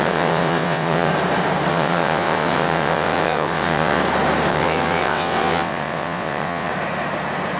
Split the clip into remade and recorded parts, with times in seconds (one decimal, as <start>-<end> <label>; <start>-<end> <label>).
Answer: 0.0-1.1 remade; 1.1-1.7 recorded; 1.7-4.0 remade; 4.0-4.5 recorded; 4.5-6.7 remade; 6.7-7.6 recorded